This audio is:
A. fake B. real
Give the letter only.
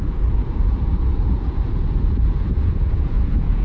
A